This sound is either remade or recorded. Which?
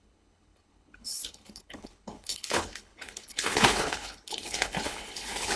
remade